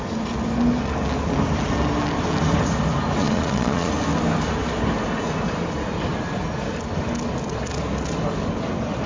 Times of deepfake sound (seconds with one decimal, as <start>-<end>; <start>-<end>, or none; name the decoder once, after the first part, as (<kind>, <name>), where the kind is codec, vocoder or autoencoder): 3.2-3.9 (vocoder, Vocos)

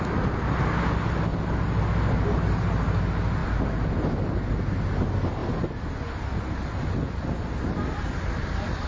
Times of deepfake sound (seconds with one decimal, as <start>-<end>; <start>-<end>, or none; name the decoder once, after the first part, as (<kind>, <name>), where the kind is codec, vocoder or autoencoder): none

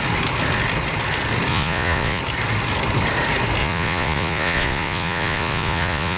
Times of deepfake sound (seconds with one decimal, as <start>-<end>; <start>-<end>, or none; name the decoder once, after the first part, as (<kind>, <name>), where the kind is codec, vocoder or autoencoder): 1.5-2.2 (vocoder, Vocos); 3.6-6.2